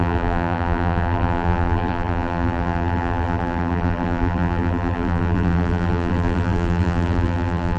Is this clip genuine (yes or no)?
no